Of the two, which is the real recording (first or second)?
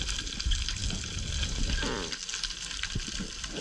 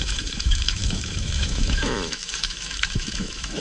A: first